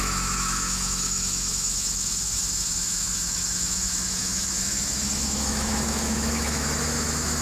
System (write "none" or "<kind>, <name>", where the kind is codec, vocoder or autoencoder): autoencoder, DAC-VAE